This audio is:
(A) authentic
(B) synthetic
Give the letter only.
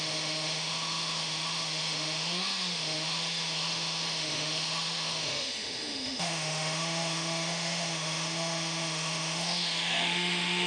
B